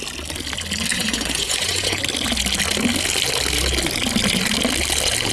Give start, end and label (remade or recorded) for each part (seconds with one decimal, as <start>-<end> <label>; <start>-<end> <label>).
0.0-0.9 recorded; 0.9-2.0 remade; 2.0-5.3 recorded